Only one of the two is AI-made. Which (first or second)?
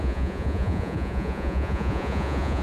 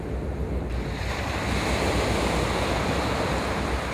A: first